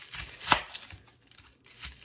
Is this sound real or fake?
real